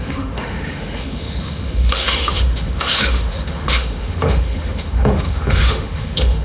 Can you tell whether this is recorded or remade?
remade